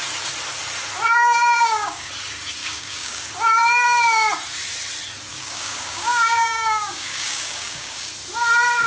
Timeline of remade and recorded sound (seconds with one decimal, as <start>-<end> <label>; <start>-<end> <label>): 0.0-1.2 recorded; 1.2-2.1 remade; 2.1-2.6 recorded; 2.6-3.3 remade; 3.3-5.3 recorded; 5.3-8.1 remade; 8.1-8.9 recorded